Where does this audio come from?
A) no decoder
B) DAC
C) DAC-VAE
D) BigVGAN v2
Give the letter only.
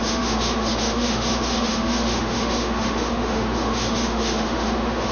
C